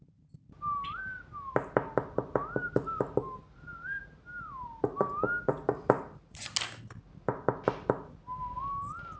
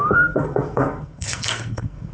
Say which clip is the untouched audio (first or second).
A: first